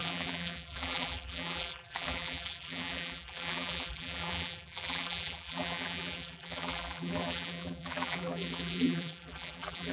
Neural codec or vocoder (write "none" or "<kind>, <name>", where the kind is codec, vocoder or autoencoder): vocoder, BigVGAN v2